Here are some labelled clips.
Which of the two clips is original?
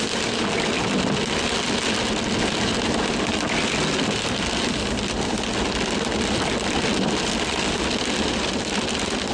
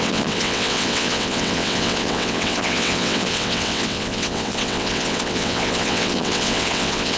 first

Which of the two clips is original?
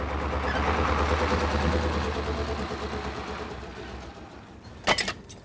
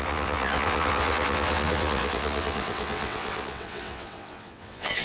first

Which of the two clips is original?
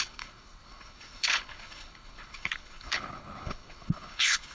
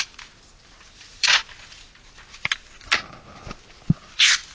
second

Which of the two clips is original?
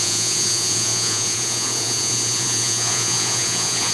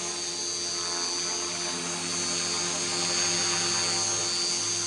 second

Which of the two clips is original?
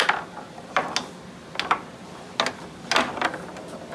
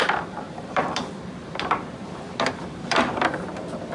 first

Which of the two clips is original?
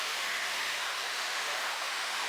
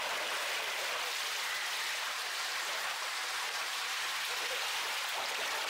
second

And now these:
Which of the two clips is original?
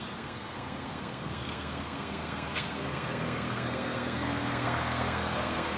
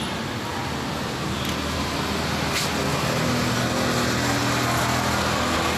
second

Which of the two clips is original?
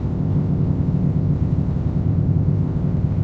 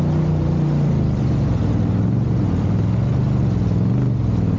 second